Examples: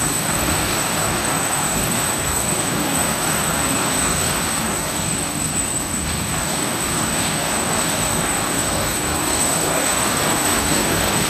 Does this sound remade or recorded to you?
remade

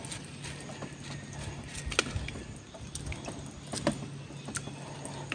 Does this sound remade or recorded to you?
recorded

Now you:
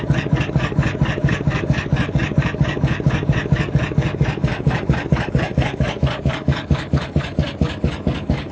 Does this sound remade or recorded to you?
remade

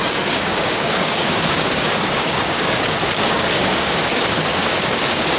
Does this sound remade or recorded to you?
remade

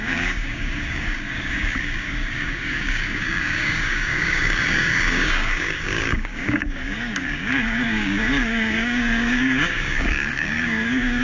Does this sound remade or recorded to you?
remade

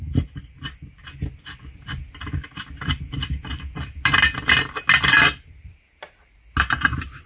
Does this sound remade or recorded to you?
recorded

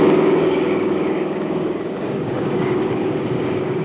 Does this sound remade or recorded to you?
remade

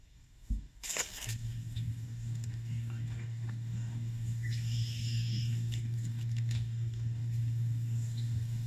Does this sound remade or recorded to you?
remade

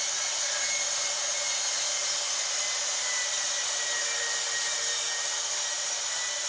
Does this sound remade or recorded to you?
recorded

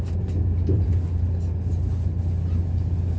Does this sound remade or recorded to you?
recorded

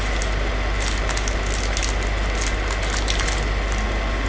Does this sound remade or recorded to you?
recorded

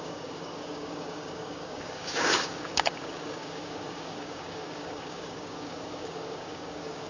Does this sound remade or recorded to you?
remade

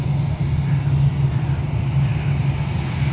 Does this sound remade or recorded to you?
recorded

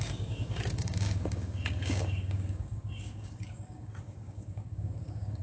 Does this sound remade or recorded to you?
remade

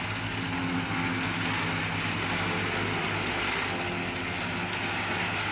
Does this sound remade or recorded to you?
recorded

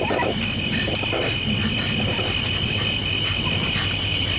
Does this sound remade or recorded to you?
recorded